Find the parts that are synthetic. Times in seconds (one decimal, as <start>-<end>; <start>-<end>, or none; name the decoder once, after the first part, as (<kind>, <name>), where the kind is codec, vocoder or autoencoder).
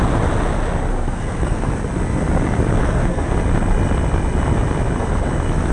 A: 0.9-1.7 (codec, SNAC); 2.8-3.3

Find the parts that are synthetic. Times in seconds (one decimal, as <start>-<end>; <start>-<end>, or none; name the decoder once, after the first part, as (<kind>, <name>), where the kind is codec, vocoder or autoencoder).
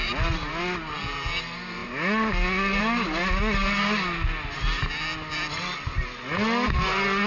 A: none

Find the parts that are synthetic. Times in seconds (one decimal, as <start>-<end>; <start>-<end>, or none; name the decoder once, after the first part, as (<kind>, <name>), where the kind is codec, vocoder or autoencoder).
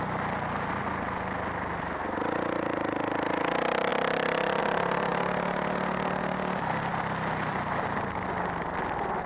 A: none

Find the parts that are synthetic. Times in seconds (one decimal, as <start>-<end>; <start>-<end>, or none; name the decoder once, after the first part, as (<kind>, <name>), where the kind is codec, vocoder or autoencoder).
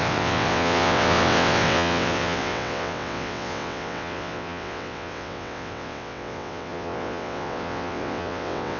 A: 0.0-8.8 (vocoder, WaveNeXt)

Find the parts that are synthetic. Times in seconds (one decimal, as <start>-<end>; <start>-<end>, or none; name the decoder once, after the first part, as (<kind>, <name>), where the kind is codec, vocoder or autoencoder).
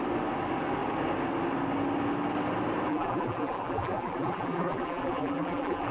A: 2.9-5.9 (vocoder, BigVGAN v2)